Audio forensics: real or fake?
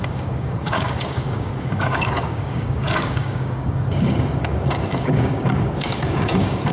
fake